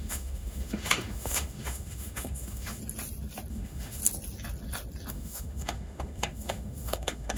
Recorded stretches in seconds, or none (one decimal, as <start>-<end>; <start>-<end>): 2.8-3.5; 4.0-5.1